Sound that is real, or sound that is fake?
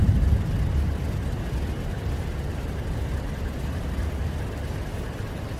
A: real